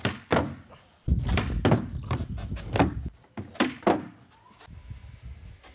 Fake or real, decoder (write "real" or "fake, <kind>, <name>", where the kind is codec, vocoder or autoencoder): real